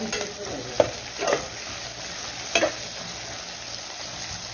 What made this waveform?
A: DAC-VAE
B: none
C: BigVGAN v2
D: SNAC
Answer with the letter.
B